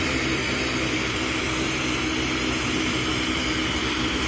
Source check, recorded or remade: remade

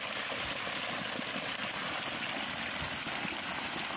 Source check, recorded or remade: recorded